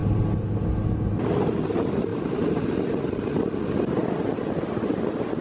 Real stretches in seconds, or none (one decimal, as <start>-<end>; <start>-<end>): 0.0-5.4